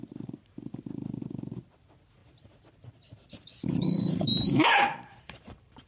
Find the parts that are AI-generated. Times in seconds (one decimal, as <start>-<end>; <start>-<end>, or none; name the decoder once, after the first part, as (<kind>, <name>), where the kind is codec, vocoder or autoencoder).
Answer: 2.2-5.9 (vocoder, BigVGAN v2)